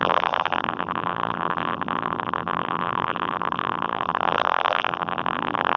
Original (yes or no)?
no